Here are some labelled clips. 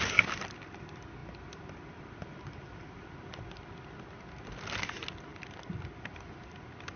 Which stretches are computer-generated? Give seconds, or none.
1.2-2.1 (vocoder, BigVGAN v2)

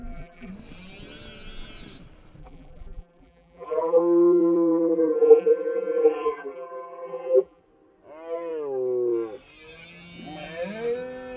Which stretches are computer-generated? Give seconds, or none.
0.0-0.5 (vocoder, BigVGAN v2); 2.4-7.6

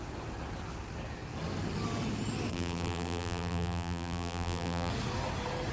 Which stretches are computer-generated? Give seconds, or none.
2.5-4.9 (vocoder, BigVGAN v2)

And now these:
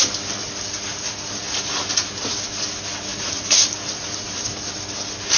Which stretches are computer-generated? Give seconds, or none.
0.4-1.7 (vocoder, BigVGAN v2); 3.1-4.8